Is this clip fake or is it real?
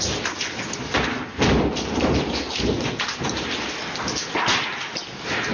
real